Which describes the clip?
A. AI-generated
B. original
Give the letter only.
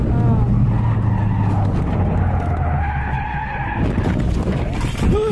B